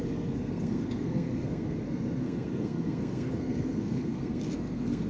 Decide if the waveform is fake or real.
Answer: fake